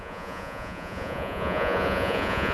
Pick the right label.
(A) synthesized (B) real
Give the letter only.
A